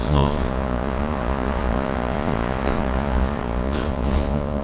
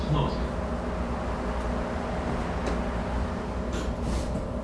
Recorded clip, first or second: second